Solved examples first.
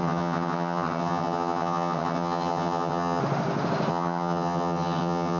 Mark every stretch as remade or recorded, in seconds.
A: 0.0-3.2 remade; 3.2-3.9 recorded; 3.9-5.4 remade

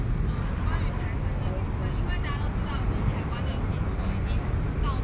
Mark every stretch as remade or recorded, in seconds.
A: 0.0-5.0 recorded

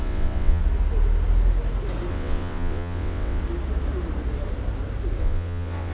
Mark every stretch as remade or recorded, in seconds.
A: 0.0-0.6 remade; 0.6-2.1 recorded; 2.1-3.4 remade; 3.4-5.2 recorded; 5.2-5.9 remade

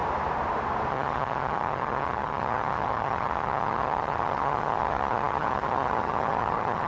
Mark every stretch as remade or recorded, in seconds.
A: 0.0-0.9 recorded; 0.9-6.9 remade

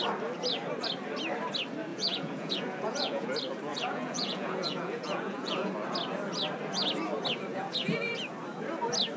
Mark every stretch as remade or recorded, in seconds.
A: 0.0-1.9 recorded; 1.9-3.3 remade; 3.3-3.7 recorded; 3.7-5.7 remade; 5.7-7.5 recorded; 7.5-8.1 remade; 8.1-9.2 recorded

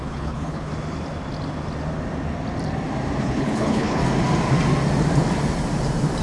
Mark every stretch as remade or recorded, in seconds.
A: 0.0-0.7 remade; 0.7-3.2 recorded; 3.2-4.0 remade; 4.0-6.2 recorded

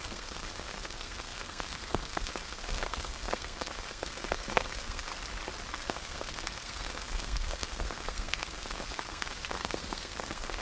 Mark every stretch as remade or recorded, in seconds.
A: 0.0-5.1 remade; 5.1-5.7 recorded; 5.7-10.6 remade